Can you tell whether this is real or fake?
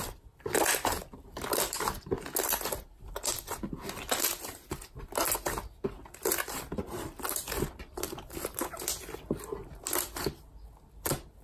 real